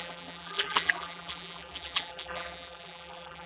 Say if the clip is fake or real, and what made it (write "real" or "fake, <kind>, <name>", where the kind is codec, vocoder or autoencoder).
fake, vocoder, BigVGAN v2